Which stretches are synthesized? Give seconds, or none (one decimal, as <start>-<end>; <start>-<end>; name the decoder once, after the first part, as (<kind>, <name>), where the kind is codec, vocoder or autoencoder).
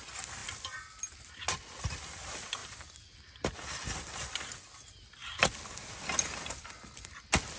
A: none